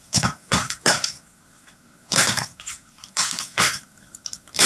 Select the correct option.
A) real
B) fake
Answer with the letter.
B